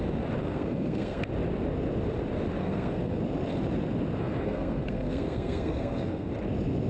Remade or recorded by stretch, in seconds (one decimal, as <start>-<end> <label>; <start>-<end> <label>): 0.0-0.4 recorded; 0.4-1.2 remade; 1.2-2.6 recorded; 2.6-3.2 remade; 3.2-4.2 recorded; 4.2-6.3 remade; 6.3-6.9 recorded